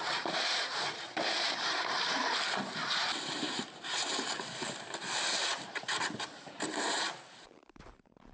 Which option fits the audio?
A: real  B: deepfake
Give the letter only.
B